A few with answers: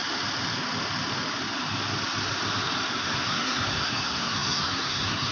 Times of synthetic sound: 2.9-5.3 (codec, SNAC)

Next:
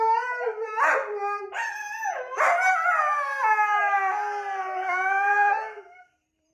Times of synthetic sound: 0.0-1.0 (vocoder, BigVGAN v2); 4.9-6.5

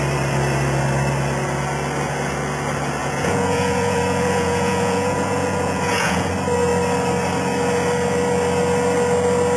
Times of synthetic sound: 3.0-6.3 (vocoder, Vocos)

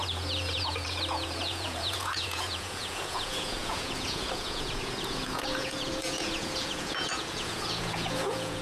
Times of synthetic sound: 0.0-8.6 (vocoder, Vocos)

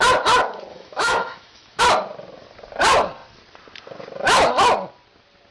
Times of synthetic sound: 0.7-1.8 (autoencoder, DAC-VAE)

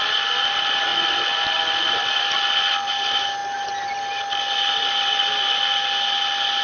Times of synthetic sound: none

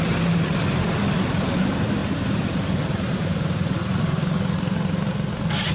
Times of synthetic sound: none